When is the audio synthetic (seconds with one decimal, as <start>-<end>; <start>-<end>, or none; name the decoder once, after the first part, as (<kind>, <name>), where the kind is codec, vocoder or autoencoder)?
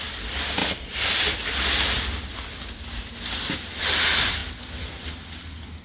0.6-1.4 (vocoder, BigVGAN v2)